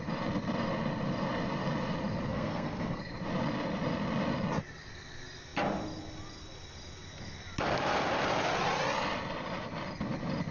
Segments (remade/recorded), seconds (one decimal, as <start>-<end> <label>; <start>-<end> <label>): 0.0-2.3 recorded; 2.3-3.0 remade; 3.0-10.5 recorded